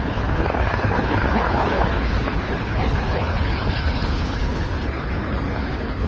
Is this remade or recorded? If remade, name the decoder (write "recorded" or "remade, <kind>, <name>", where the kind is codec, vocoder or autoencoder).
remade, codec, HILCodec